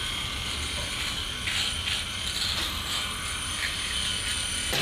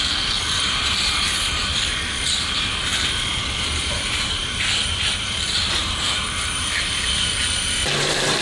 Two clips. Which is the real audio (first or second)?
first